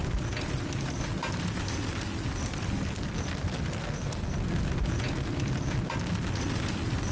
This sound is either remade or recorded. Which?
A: recorded